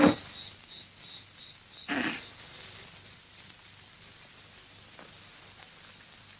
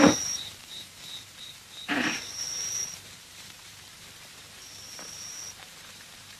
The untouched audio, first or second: first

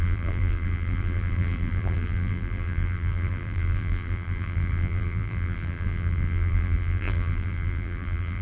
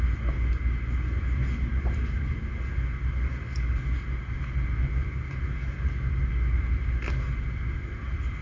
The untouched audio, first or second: second